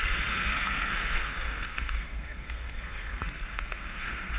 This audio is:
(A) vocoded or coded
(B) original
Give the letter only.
A